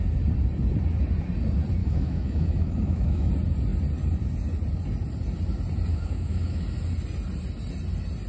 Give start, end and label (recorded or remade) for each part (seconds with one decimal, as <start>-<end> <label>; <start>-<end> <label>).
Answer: 0.0-1.8 recorded; 1.8-3.3 remade; 3.3-5.9 recorded; 5.9-6.6 remade; 6.6-8.3 recorded